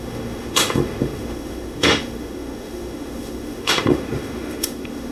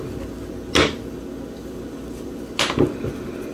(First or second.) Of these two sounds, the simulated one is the first